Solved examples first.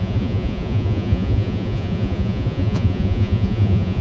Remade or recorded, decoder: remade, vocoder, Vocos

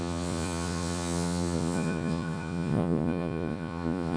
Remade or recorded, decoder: remade, vocoder, Vocos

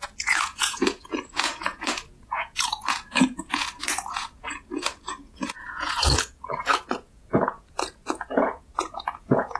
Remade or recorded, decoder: remade, vocoder, Vocos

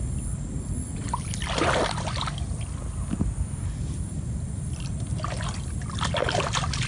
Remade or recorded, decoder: recorded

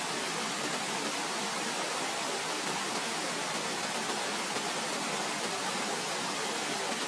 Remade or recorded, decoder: recorded